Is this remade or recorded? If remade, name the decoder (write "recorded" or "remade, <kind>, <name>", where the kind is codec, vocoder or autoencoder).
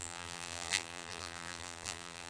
remade, vocoder, BigVGAN v2